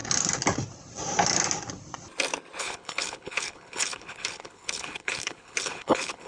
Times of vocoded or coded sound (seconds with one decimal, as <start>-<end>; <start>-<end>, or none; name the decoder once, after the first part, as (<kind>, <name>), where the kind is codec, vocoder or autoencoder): 2.6-6.3 (codec, HILCodec)